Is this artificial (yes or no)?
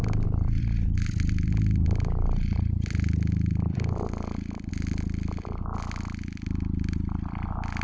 no